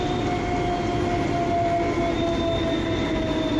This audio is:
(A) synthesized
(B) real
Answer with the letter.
B